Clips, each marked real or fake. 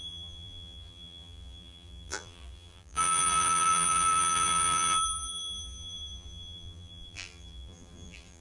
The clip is fake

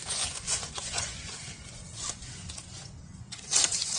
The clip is fake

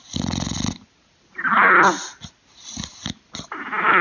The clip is real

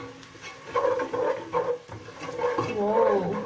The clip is real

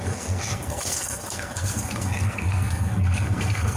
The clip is fake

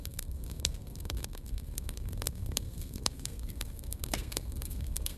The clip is fake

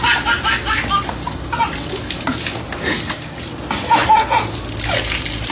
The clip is real